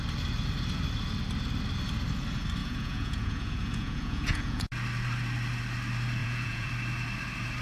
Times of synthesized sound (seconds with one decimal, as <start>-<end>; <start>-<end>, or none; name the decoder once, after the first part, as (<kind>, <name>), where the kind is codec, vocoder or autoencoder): 2.6-4.7 (vocoder, Vocos); 6.2-6.7